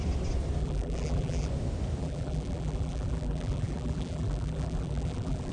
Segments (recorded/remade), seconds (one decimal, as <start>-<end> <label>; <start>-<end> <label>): 0.0-0.6 recorded; 0.6-1.5 remade; 1.5-2.0 recorded; 2.0-5.5 remade